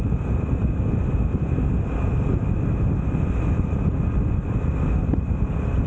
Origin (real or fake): real